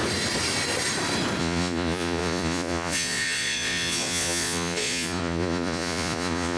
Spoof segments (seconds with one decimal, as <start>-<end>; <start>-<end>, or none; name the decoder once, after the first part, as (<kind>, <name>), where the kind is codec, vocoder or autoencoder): 1.4-6.6 (vocoder, Vocos)